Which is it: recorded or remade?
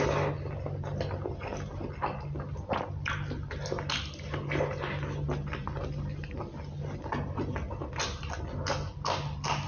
recorded